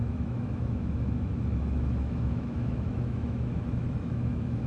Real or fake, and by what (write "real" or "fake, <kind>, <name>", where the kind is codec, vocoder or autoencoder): fake, autoencoder, DAC-VAE